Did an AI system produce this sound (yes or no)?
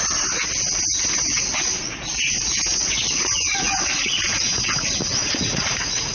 yes